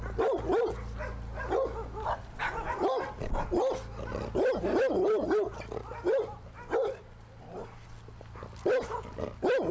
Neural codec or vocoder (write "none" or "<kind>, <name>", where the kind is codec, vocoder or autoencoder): none